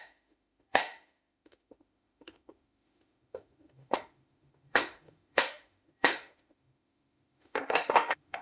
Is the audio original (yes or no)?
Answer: no